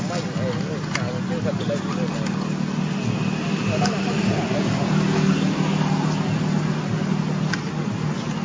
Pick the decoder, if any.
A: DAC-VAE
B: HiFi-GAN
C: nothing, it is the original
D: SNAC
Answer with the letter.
C